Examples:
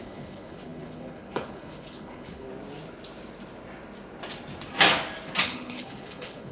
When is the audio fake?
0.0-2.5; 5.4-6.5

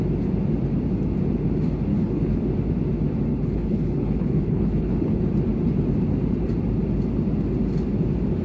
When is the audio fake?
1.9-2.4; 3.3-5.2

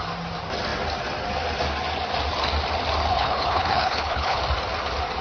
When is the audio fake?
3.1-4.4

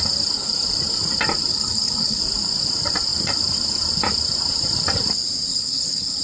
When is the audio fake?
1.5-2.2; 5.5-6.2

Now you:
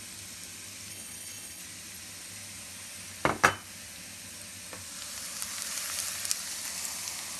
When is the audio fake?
0.9-1.6